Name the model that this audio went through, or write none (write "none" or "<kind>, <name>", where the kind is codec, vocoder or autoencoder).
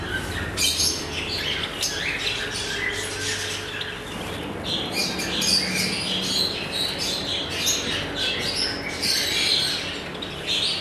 none